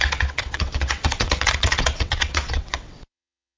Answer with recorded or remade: remade